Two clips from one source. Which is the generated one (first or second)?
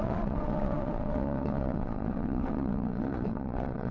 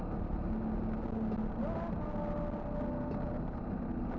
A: first